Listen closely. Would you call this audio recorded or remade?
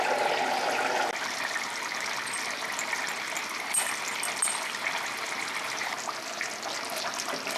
recorded